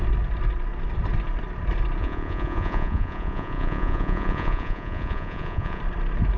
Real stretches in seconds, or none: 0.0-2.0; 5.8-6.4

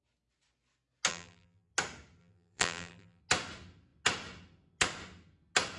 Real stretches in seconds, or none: 0.0-1.1; 1.7-2.2; 3.2-5.8

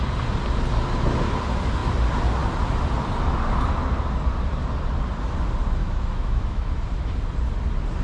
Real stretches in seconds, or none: 0.0-5.8; 7.1-8.0

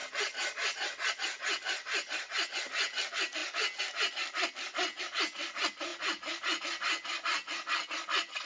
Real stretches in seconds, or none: 0.0-8.5

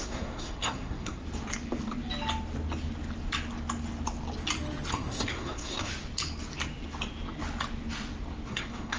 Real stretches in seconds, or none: 1.2-4.9; 5.9-8.5

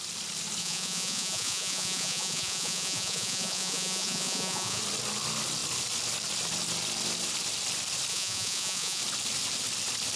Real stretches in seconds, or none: 0.0-0.6; 4.8-8.1; 9.0-10.2